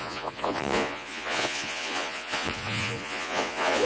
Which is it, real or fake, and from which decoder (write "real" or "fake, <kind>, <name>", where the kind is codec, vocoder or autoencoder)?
fake, vocoder, Vocos